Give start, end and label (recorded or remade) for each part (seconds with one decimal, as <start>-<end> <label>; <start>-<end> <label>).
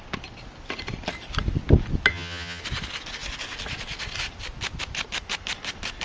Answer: 0.0-2.1 recorded; 2.1-2.6 remade; 2.6-6.0 recorded